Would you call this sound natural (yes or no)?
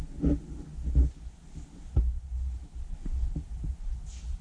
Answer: yes